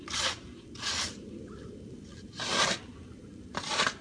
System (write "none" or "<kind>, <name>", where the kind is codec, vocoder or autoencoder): none